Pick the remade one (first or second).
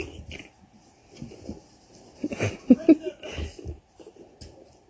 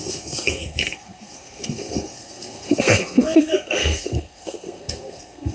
second